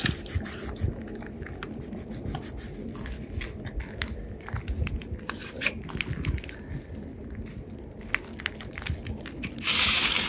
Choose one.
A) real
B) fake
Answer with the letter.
A